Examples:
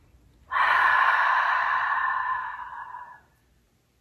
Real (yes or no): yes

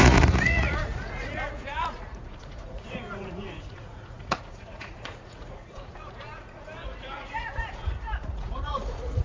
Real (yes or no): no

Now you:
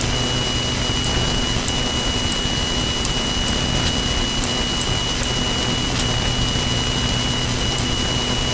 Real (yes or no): yes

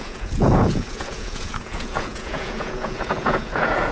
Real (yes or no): no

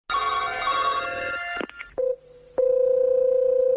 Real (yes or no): yes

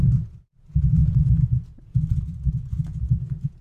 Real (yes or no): no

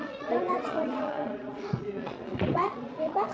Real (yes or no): no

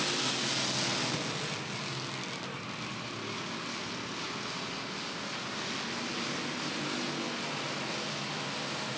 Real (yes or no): yes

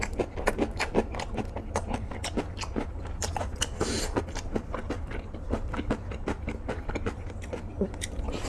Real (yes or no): yes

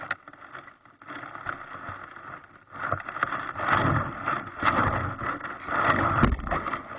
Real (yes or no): yes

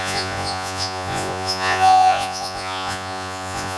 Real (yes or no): no